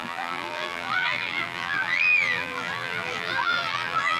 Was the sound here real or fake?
fake